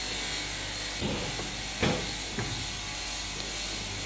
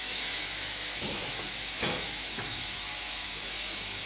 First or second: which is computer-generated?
second